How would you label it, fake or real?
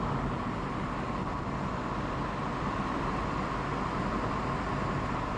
real